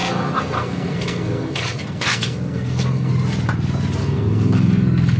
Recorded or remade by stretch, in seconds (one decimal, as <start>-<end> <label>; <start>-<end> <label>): 0.0-3.1 remade; 3.1-4.0 recorded; 4.0-5.2 remade